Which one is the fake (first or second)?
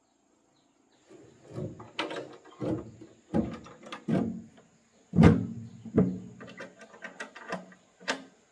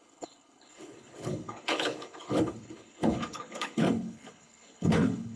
second